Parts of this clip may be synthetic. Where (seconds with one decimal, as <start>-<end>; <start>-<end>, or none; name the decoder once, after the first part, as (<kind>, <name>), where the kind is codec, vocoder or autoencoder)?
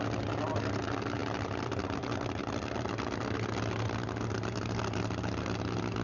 none